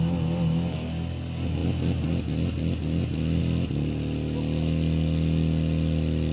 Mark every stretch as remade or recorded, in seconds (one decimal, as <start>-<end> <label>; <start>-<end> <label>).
0.0-6.3 recorded